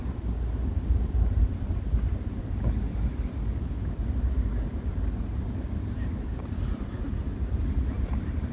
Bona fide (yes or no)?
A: yes